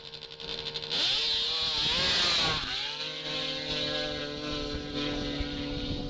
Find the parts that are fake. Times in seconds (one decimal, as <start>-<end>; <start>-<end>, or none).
none